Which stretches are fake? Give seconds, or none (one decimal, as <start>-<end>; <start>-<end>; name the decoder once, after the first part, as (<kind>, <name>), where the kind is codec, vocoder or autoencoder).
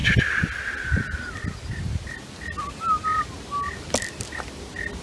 none